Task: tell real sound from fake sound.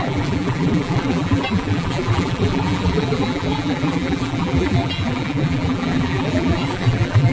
fake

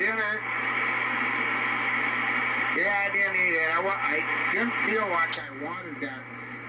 real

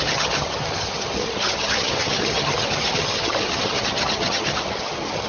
fake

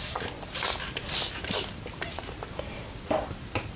real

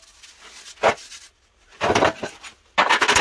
real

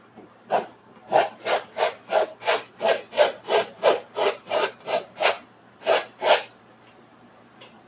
fake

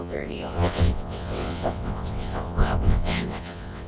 fake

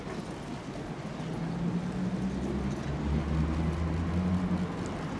real